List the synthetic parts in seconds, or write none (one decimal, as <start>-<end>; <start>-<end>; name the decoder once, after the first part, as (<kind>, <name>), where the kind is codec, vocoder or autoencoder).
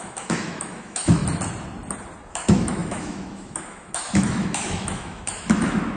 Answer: 0.0-1.2 (autoencoder, DAC-VAE); 2.3-6.0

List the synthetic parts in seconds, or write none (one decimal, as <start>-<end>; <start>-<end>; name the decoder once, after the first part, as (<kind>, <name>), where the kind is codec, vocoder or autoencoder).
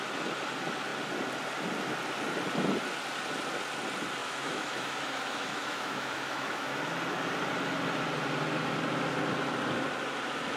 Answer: 4.2-6.8 (autoencoder, DAC-VAE)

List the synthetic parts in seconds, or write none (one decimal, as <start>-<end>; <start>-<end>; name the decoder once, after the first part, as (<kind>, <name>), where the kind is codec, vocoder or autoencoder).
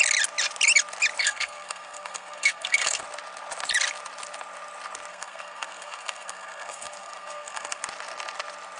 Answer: 1.2-3.0 (codec, SNAC); 5.1-7.8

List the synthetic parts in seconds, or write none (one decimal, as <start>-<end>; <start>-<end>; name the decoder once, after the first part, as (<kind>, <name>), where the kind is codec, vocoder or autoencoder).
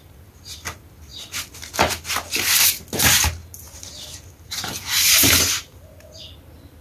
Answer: 1.1-1.9 (vocoder, BigVGAN v2); 3.4-5.8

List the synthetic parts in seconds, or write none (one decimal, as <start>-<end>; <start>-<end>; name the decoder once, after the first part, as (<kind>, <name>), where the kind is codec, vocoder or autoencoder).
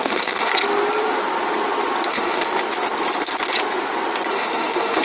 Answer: 0.0-0.5 (autoencoder, DAC-VAE); 2.1-2.5; 4.3-5.0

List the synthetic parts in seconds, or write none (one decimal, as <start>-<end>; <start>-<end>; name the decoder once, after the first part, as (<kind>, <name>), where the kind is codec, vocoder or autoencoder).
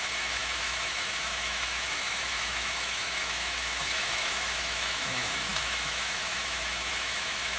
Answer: 0.0-7.6 (autoencoder, DAC-VAE)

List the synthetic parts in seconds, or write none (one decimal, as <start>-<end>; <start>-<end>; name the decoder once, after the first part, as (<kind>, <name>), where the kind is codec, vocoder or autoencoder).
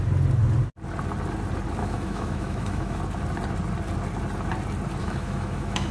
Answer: 1.8-3.0 (autoencoder, DAC-VAE); 5.0-5.9